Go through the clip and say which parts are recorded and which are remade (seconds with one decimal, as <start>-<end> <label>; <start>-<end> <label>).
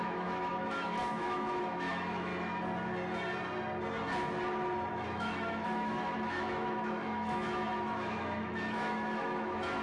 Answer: 0.0-2.3 remade; 2.3-4.9 recorded; 4.9-9.8 remade